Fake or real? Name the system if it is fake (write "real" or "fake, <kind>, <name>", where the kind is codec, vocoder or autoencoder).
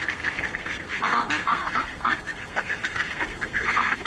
fake, codec, SNAC